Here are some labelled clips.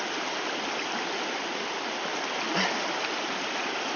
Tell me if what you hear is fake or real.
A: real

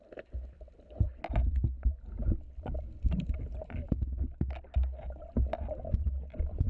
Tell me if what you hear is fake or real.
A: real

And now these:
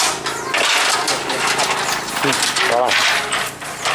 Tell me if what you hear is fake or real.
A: real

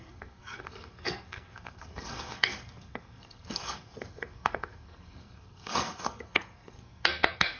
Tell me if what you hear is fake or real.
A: fake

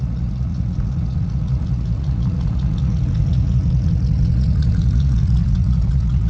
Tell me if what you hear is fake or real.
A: fake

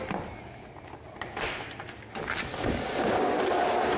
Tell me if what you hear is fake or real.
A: real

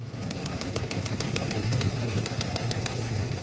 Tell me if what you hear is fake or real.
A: fake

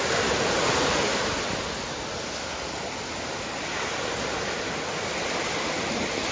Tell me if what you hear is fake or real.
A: real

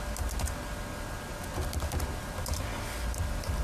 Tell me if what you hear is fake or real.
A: real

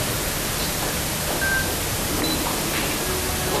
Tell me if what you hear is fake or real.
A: real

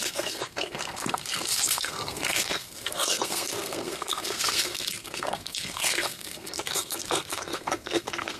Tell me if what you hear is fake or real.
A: fake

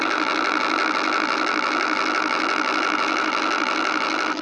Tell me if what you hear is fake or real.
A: fake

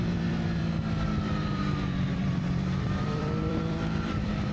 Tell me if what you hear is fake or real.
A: fake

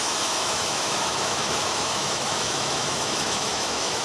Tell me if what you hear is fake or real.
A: fake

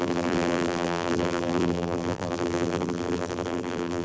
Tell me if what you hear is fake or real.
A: fake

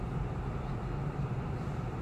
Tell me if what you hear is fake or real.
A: fake